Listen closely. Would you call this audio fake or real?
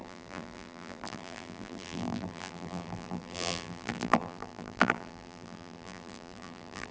fake